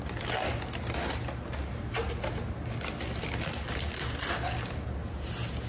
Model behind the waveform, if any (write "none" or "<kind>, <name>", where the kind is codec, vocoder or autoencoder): none